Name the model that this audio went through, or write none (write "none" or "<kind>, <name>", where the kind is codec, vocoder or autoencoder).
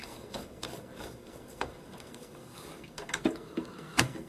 codec, SNAC